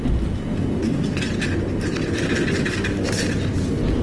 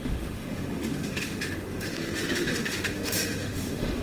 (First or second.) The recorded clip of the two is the first